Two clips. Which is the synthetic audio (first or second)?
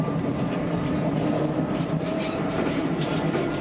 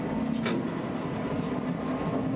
first